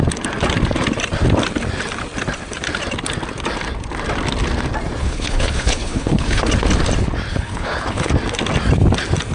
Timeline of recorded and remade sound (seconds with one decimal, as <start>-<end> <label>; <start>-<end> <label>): 0.0-5.0 recorded; 5.0-6.4 remade; 6.4-7.3 recorded; 7.3-8.1 remade; 8.1-9.3 recorded